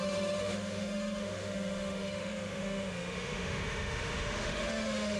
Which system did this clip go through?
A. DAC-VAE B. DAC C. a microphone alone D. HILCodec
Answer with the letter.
A